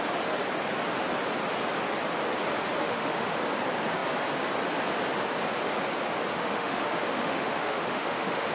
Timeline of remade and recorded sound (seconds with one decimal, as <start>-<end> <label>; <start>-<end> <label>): 0.0-2.8 recorded; 2.8-3.4 remade; 3.4-6.3 recorded; 6.3-8.5 remade